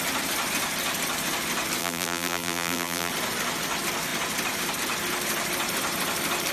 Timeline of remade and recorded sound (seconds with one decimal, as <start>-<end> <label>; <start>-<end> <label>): 0.0-1.8 recorded; 1.8-3.1 remade; 3.1-6.5 recorded